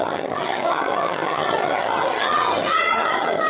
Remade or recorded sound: remade